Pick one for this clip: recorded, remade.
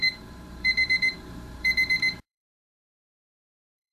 remade